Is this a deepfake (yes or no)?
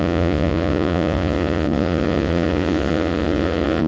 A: yes